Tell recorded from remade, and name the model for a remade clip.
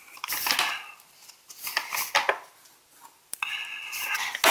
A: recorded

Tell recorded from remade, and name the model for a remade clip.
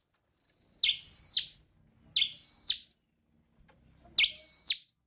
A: recorded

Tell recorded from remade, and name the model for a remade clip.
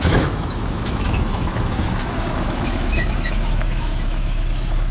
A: remade, autoencoder, DAC-VAE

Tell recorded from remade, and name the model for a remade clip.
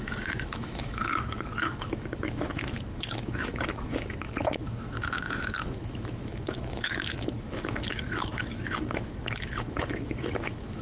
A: remade, autoencoder, DAC-VAE